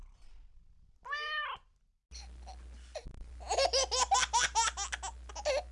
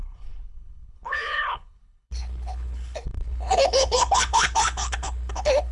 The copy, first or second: second